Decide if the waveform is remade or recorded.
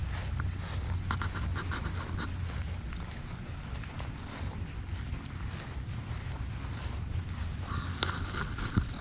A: recorded